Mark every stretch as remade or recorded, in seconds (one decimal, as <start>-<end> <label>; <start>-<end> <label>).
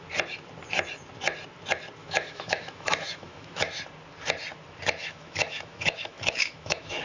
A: 0.0-2.0 recorded; 2.0-3.8 remade; 3.8-5.0 recorded; 5.0-7.0 remade